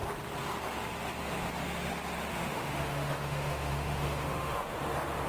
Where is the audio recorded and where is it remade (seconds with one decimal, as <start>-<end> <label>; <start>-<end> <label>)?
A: 0.0-2.3 recorded; 2.3-4.8 remade; 4.8-5.3 recorded